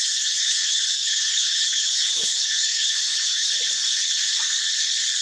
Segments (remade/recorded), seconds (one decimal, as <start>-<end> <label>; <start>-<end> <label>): 0.0-0.4 recorded; 0.4-3.5 remade; 3.5-5.2 recorded